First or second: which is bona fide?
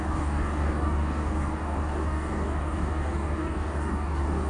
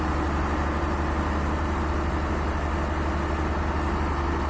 second